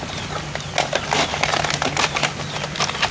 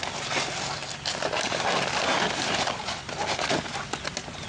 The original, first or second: second